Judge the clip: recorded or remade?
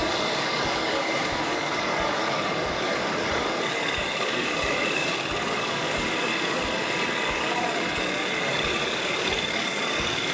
remade